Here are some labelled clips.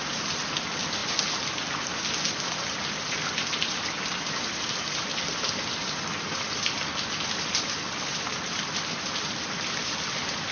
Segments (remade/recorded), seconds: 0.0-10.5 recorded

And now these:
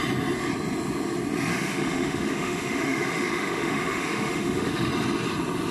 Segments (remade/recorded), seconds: 0.0-1.5 recorded; 1.5-4.9 remade; 4.9-5.7 recorded

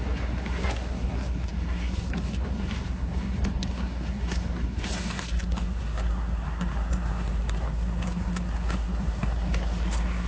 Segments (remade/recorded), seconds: 0.0-10.3 remade